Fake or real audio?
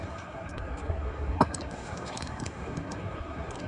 fake